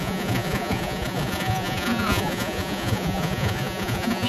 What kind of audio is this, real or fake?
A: fake